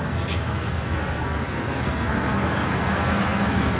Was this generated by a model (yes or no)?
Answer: yes